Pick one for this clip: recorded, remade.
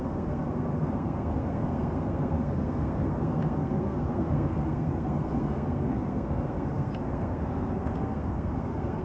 remade